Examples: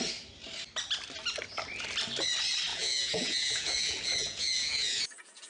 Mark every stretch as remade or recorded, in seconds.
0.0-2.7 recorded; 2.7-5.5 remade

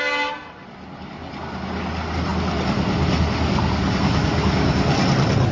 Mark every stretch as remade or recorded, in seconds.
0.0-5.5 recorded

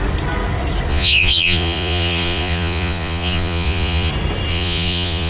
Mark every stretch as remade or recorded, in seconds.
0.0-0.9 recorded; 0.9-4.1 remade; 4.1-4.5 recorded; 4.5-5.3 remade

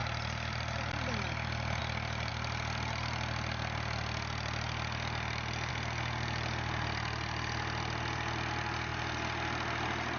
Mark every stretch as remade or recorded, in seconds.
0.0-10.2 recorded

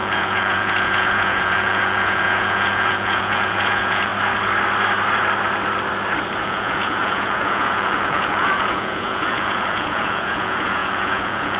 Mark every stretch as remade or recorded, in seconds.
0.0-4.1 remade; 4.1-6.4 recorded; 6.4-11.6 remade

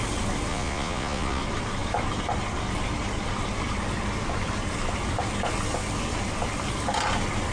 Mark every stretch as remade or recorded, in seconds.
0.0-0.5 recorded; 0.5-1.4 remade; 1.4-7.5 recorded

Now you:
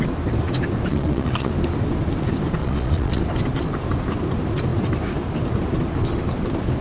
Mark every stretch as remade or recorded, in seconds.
0.0-0.9 recorded; 0.9-1.5 remade; 1.5-2.6 recorded; 2.6-3.2 remade; 3.2-6.8 recorded